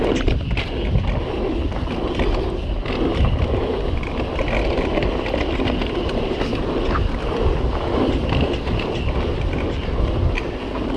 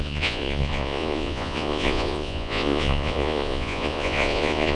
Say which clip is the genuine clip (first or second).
first